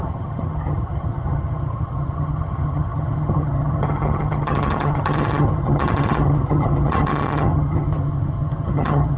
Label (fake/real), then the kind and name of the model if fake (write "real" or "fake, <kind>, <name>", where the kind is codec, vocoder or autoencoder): fake, vocoder, HiFi-GAN